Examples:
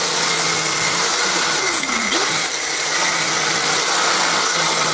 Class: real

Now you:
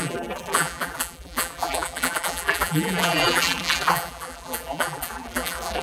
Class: fake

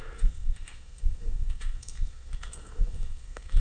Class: fake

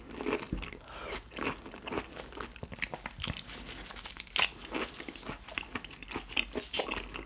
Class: real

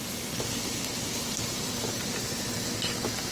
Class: real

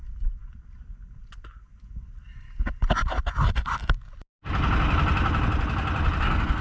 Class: real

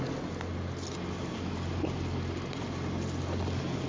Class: real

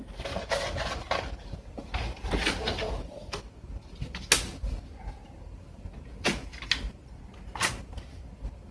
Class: real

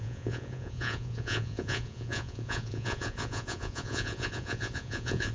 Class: fake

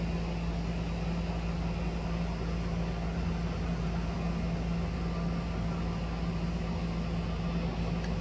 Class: real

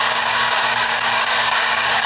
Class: fake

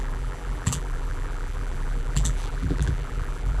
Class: fake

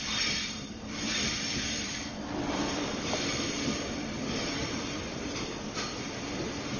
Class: fake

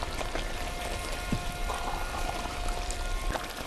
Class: fake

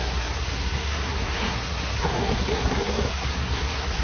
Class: fake